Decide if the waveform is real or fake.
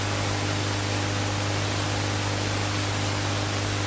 real